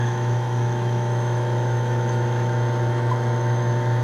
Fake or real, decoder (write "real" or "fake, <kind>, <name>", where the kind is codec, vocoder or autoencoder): fake, autoencoder, DAC-VAE